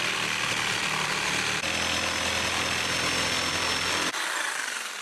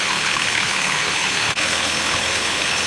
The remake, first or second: second